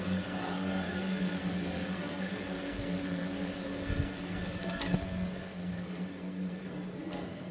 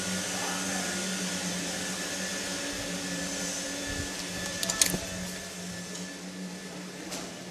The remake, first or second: first